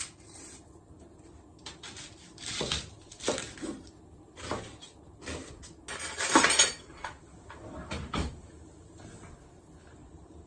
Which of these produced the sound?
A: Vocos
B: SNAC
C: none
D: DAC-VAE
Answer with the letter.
C